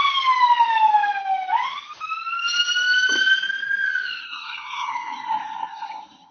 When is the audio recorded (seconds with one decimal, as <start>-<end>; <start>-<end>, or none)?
0.0-4.2